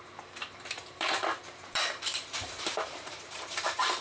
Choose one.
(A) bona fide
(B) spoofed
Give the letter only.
B